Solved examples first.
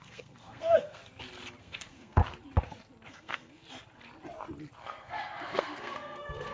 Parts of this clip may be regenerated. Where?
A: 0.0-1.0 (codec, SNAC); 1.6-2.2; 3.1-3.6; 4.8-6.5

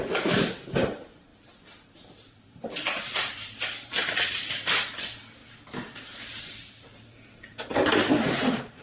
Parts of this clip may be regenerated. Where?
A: 0.0-8.8 (vocoder, BigVGAN v2)